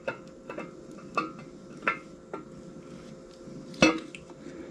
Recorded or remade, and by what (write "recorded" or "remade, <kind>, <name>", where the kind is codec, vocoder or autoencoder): recorded